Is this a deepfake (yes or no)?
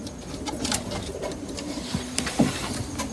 yes